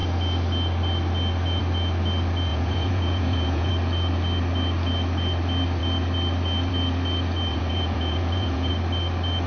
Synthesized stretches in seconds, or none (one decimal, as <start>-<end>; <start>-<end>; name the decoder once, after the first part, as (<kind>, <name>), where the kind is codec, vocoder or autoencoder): 2.5-3.7 (vocoder, Vocos); 7.5-8.7